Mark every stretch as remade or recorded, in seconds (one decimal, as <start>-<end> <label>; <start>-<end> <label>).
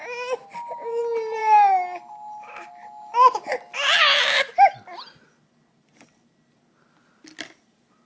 0.0-8.1 recorded